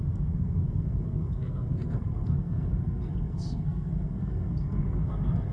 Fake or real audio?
fake